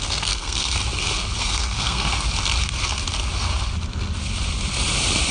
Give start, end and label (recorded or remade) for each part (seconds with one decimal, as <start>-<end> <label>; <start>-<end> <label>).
0.0-0.8 remade; 0.8-1.4 recorded; 1.4-2.1 remade; 2.1-5.3 recorded